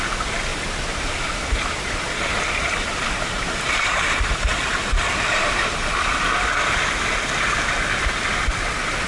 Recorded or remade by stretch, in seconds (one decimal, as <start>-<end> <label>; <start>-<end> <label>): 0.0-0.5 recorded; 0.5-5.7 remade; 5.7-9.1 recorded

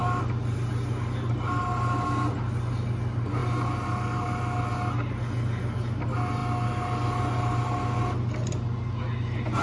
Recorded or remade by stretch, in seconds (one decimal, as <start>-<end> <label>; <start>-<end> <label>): 0.0-9.6 recorded

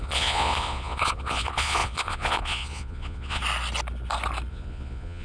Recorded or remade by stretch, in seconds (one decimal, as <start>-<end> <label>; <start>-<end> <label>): 0.0-3.4 remade; 3.4-4.5 recorded; 4.5-5.2 remade

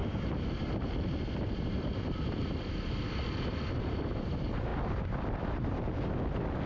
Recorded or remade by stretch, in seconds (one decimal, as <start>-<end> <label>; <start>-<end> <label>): 0.0-4.0 remade; 4.0-6.7 recorded